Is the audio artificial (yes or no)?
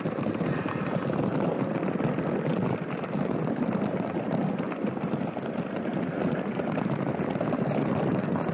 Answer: no